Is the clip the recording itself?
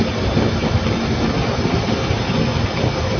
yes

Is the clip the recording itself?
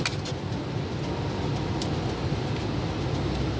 yes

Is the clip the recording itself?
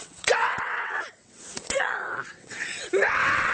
no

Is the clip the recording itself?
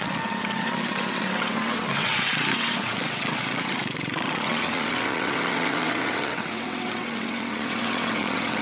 no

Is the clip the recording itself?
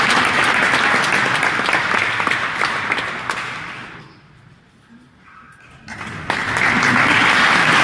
yes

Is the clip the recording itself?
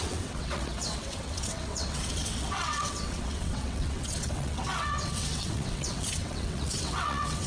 no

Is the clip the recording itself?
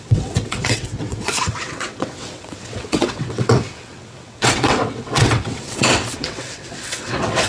no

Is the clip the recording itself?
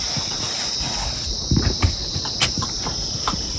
yes